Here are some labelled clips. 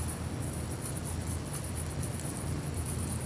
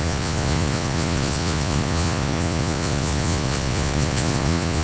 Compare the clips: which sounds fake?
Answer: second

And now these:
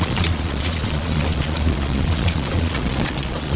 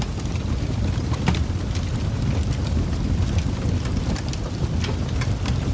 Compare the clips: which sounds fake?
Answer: first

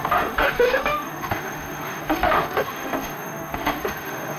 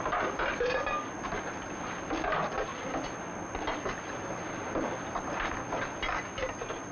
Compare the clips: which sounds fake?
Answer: first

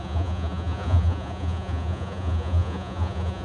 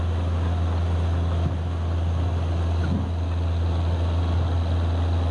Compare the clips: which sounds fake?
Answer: first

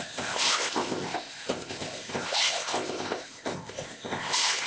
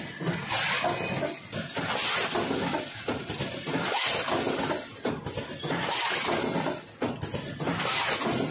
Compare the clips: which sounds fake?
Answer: first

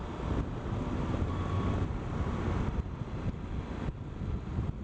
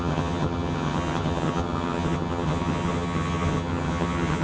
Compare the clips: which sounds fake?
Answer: second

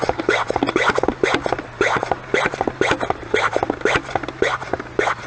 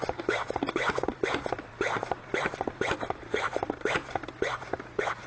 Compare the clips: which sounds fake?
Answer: second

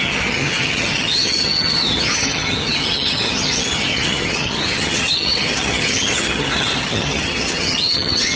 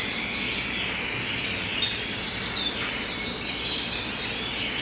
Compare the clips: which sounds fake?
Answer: first